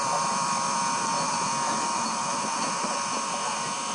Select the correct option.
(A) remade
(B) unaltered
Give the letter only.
B